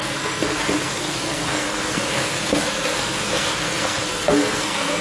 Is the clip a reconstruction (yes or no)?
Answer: yes